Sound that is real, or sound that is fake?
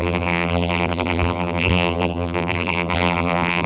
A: fake